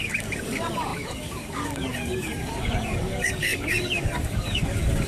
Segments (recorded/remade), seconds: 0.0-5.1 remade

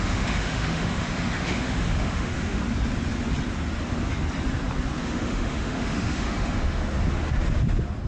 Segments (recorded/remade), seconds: 0.0-2.6 remade; 2.6-5.0 recorded; 5.0-6.8 remade; 6.8-8.1 recorded

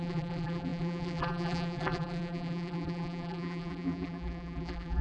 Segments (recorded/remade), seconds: 0.0-5.0 remade

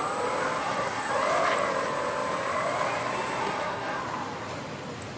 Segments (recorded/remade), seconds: 0.0-0.6 recorded; 0.6-1.1 remade; 1.1-3.4 recorded; 3.4-4.0 remade; 4.0-5.2 recorded

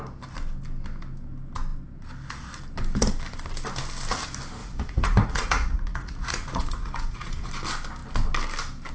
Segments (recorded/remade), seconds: 0.0-4.6 recorded; 4.6-7.5 remade; 7.5-8.9 recorded

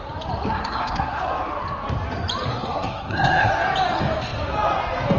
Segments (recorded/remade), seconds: 0.0-0.5 recorded; 0.5-1.2 remade; 1.2-2.5 recorded; 2.5-3.5 remade; 3.5-5.2 recorded